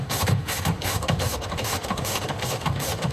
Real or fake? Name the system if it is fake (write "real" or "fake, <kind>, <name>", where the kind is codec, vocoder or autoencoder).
fake, autoencoder, DAC-VAE